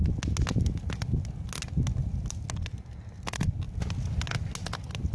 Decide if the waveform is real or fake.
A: real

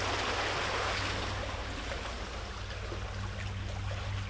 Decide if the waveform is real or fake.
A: real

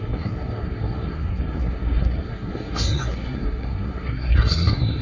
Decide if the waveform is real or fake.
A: fake